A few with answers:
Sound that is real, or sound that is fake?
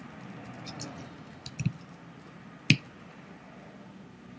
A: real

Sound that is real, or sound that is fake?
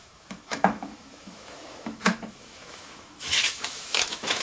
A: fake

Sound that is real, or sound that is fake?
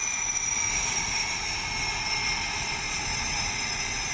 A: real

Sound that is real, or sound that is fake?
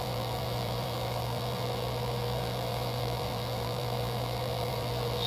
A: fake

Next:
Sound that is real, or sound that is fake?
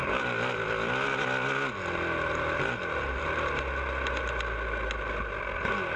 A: real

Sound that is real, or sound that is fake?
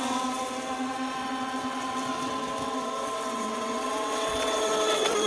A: fake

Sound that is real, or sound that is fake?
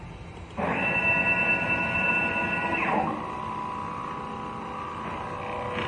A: real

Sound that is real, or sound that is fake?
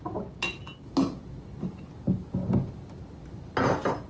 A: real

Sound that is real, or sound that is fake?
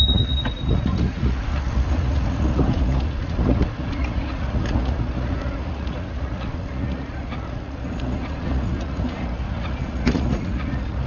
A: fake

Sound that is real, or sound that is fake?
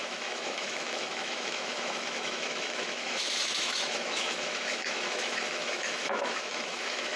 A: fake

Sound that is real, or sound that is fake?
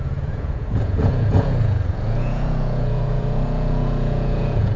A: fake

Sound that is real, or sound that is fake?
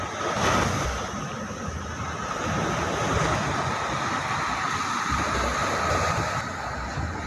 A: real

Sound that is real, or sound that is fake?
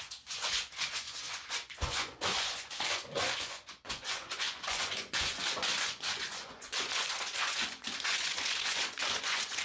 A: fake